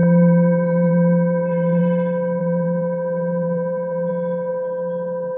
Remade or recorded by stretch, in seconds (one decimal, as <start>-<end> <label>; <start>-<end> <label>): 0.0-1.8 remade; 1.8-2.4 recorded; 2.4-4.1 remade; 4.1-5.4 recorded